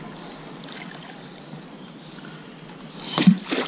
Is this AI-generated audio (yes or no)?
no